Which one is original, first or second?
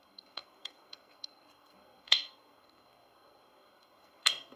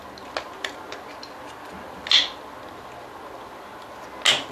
second